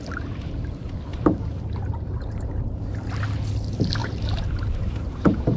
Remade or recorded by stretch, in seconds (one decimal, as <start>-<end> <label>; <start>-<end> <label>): 0.0-1.1 recorded; 1.1-2.9 remade; 2.9-4.0 recorded; 4.0-5.6 remade